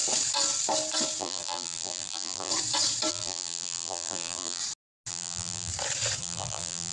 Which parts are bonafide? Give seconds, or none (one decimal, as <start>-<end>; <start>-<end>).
0.0-1.2; 2.5-3.1; 4.6-5.1; 5.7-6.2